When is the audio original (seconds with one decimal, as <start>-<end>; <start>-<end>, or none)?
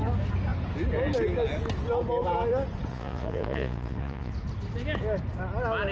0.0-2.9; 4.3-5.9